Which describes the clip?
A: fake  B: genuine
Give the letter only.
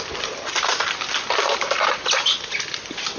B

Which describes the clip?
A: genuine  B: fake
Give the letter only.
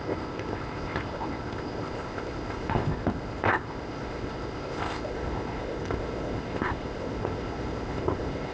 B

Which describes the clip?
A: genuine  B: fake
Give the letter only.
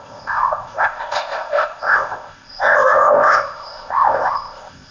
B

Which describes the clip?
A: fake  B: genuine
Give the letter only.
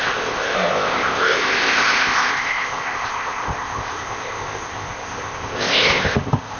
A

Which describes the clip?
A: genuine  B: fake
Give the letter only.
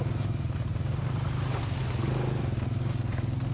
A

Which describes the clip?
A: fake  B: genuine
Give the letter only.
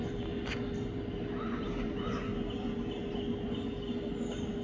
B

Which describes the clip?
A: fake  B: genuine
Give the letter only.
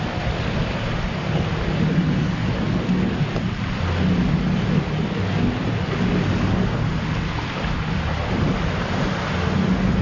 B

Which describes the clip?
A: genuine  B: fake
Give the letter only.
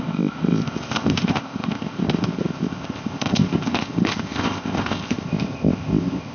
B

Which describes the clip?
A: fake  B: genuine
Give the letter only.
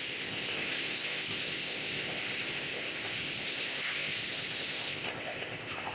A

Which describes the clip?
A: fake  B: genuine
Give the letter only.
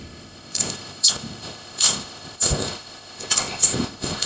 A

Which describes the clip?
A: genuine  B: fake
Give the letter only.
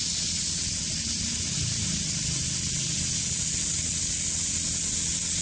A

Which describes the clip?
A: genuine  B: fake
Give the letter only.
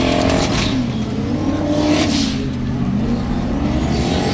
A